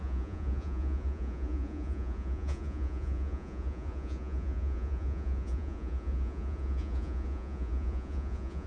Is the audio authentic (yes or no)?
no